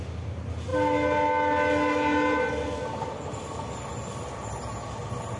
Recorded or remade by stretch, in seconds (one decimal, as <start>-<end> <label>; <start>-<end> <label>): 0.0-5.4 recorded